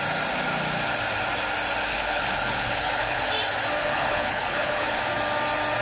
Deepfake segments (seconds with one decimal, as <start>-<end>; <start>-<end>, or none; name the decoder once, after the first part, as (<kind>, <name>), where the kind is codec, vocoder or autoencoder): 1.9-3.2 (codec, HILCodec); 3.8-5.0